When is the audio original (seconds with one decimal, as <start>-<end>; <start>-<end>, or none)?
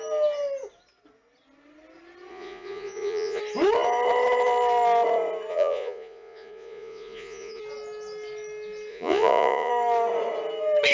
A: 0.0-2.3; 3.4-5.5; 7.6-8.9; 9.7-10.9